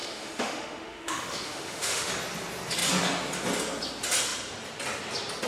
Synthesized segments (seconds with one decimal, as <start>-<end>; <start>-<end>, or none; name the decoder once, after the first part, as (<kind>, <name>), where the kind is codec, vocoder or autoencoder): 0.0-2.1 (autoencoder, DAC-VAE)